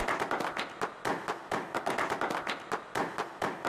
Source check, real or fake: real